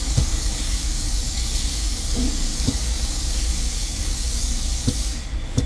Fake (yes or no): yes